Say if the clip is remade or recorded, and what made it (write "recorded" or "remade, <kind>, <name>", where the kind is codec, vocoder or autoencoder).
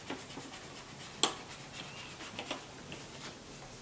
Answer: recorded